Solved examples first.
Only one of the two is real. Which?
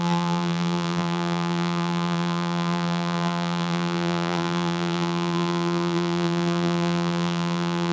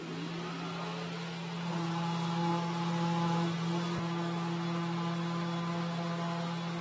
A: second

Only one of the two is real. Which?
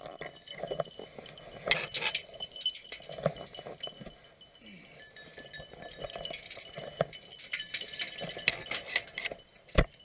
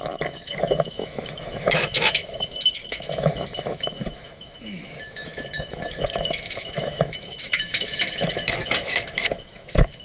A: first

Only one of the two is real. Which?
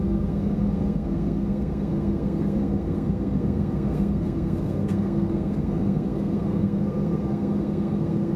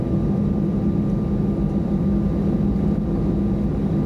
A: second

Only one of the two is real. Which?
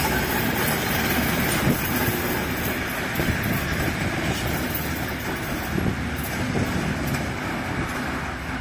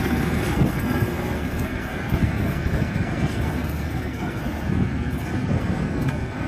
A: first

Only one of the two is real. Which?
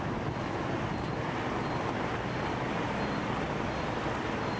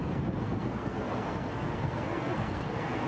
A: first